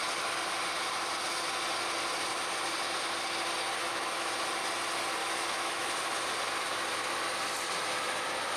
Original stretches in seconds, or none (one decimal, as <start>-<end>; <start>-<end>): 0.0-3.8; 4.3-5.2; 5.9-8.6